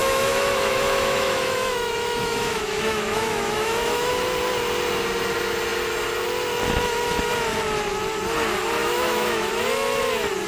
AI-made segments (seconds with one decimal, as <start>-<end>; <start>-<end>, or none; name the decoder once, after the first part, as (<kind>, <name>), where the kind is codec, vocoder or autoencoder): 0.0-4.1 (autoencoder, DAC-VAE); 8.8-9.5